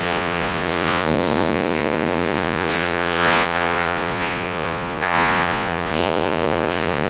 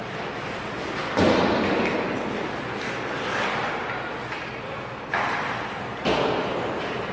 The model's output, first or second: first